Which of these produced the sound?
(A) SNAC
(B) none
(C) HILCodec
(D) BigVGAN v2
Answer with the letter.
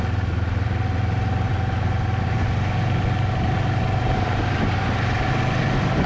B